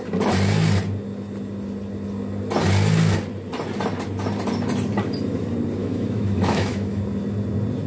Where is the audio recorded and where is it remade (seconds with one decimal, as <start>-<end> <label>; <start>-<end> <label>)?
0.0-5.8 recorded; 5.8-7.0 remade; 7.0-7.9 recorded